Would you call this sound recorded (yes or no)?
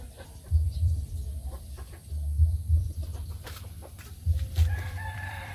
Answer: no